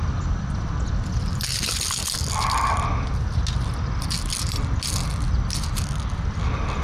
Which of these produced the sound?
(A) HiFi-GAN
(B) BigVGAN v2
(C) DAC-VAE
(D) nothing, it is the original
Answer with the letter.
D